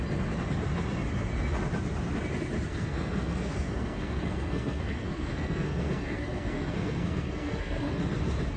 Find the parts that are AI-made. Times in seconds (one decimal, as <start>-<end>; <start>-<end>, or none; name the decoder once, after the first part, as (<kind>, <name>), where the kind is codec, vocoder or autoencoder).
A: 2.7-7.9 (codec, SNAC)